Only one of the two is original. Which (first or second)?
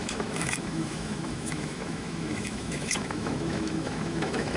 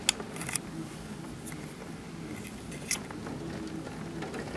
second